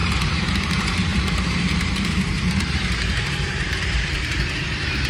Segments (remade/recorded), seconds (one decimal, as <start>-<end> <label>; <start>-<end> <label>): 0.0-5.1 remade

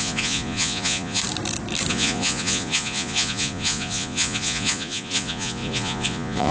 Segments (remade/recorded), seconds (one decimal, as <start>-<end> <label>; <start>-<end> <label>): 0.0-1.2 remade; 1.2-1.9 recorded; 1.9-6.5 remade

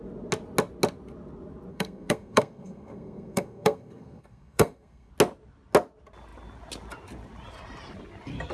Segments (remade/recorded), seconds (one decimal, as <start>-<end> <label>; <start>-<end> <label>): 0.0-1.7 recorded; 1.7-5.1 remade; 5.1-8.5 recorded

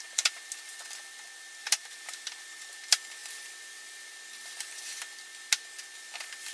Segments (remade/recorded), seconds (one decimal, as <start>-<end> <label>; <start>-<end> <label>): 0.0-1.6 recorded; 1.6-2.8 remade; 2.8-6.5 recorded

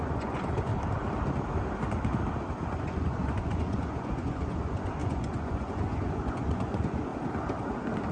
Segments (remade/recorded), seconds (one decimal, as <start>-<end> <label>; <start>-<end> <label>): 0.0-0.7 remade; 0.7-2.8 recorded; 2.8-7.1 remade; 7.1-8.1 recorded

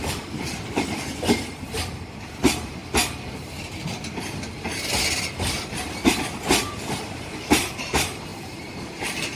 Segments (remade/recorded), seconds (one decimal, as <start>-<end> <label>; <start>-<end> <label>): 0.0-2.8 remade; 2.8-6.5 recorded; 6.5-9.4 remade

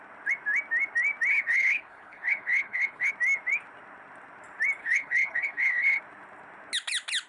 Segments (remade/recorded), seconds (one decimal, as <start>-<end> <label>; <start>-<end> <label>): 0.0-1.3 recorded; 1.3-3.1 remade; 3.1-4.8 recorded; 4.8-6.0 remade; 6.0-7.3 recorded